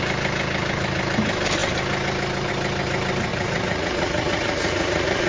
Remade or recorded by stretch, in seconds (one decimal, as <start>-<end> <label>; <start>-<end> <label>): 0.0-3.3 recorded; 3.3-5.3 remade